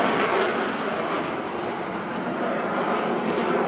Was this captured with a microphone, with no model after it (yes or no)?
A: yes